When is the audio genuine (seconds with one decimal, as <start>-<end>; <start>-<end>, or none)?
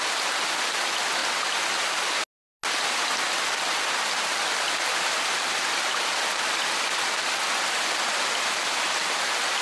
0.0-9.6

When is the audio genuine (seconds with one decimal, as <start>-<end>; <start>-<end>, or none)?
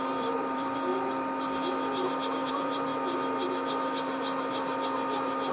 0.9-2.5; 2.9-5.5